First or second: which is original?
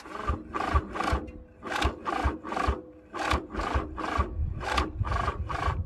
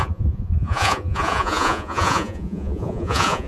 first